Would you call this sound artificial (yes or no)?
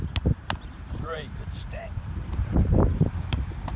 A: yes